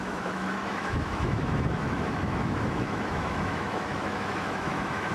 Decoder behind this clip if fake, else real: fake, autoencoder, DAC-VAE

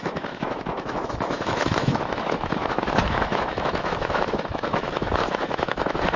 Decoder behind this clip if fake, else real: fake, autoencoder, DAC-VAE